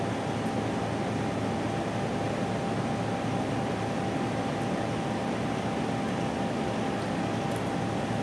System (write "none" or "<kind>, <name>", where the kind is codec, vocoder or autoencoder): none